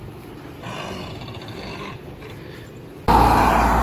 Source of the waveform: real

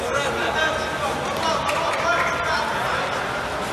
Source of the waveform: real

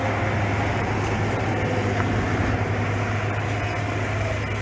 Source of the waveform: real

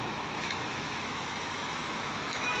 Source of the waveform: fake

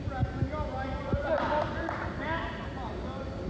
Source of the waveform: real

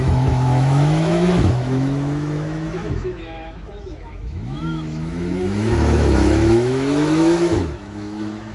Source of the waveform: fake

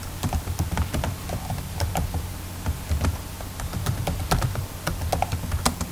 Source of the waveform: real